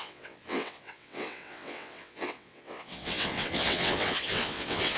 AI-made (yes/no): yes